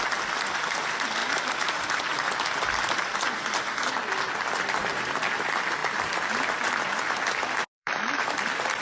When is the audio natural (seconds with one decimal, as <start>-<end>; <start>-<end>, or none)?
0.0-7.7; 8.3-8.8